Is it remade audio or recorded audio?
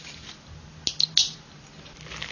recorded